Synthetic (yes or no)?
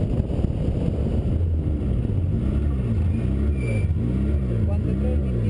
no